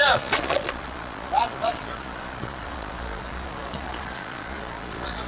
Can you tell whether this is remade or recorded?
remade